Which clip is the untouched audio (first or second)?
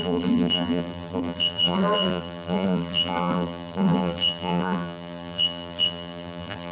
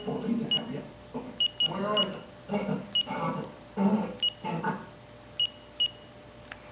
second